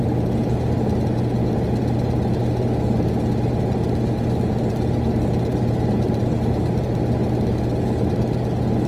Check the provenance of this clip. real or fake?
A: real